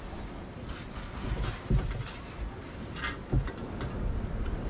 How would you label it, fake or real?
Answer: real